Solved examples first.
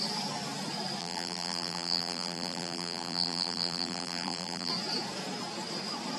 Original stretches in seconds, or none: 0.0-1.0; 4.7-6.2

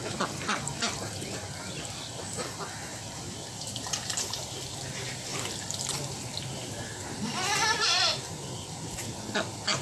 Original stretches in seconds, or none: 0.0-2.9; 4.5-9.8

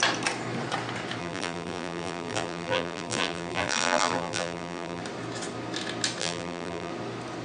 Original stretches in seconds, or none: 0.0-1.2; 5.0-6.2; 6.9-7.4

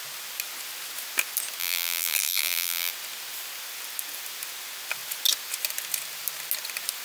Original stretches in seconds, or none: 0.0-1.6; 2.9-7.0

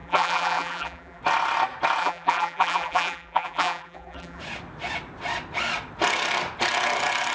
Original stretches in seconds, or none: 1.2-2.0; 4.4-7.3

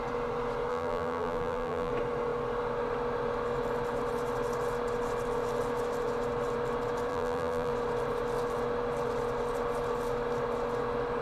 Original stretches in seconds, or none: 0.0-0.7; 1.9-7.1; 7.7-11.2

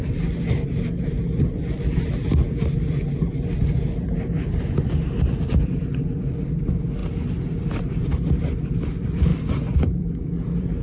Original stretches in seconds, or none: none

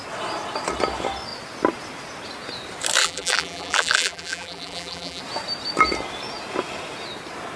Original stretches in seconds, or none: 0.0-3.0; 5.2-7.6